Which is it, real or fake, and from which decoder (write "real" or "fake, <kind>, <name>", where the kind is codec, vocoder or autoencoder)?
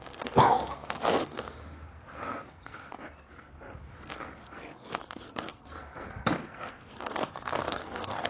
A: fake, codec, SNAC